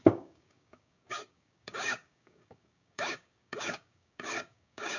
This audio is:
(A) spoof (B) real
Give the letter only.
A